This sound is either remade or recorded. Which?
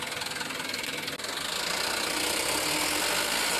recorded